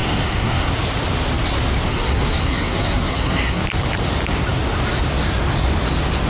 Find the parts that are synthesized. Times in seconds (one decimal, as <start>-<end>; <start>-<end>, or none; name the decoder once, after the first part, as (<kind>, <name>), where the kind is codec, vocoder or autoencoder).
0.0-0.7 (codec, SNAC); 1.9-3.6